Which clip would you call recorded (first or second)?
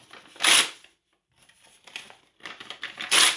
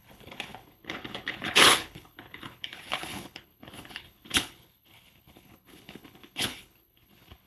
first